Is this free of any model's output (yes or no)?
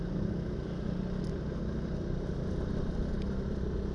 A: yes